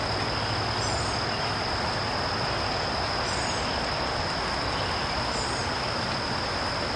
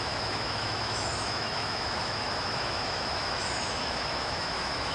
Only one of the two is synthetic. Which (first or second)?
second